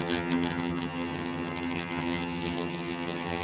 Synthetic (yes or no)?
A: yes